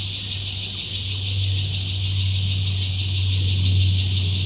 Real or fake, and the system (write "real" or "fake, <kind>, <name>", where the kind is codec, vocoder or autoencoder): real